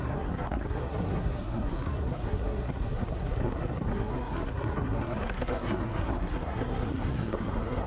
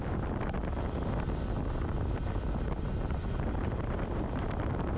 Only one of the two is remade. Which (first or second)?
first